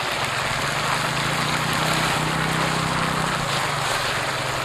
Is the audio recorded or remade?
recorded